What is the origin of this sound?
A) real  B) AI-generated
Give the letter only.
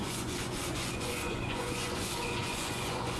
B